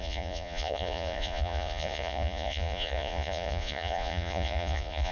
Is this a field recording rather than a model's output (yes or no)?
no